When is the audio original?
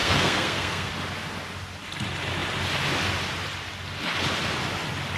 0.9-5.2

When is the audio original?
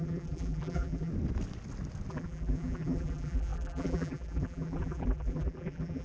1.1-2.1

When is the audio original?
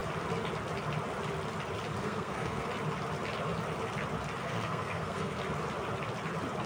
0.0-2.0; 2.7-4.4; 5.4-6.7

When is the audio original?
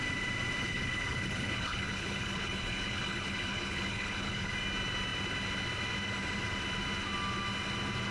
0.0-0.6; 4.5-8.1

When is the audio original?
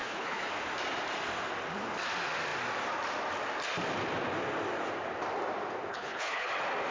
0.5-5.9; 6.5-6.9